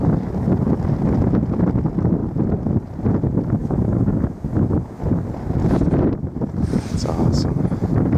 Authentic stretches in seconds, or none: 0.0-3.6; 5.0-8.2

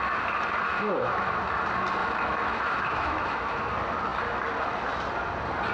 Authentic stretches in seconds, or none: 0.0-0.7; 1.4-2.0; 3.5-5.7

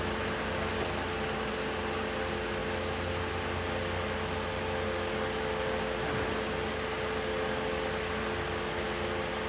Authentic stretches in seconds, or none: 0.0-9.5

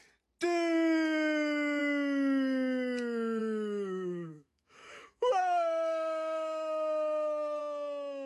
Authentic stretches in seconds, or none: 0.0-3.4; 7.6-8.3

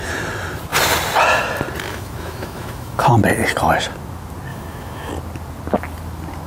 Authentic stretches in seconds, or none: 0.0-1.9; 3.1-4.5; 5.1-6.5

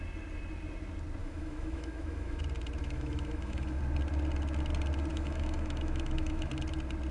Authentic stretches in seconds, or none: 0.0-1.2; 2.4-2.8; 3.8-5.1; 6.5-7.1